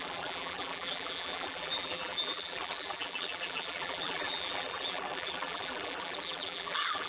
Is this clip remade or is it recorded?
remade